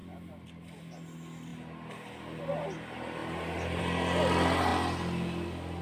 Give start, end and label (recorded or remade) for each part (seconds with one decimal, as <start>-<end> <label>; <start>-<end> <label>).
0.0-5.8 recorded